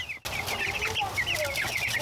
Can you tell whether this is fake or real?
real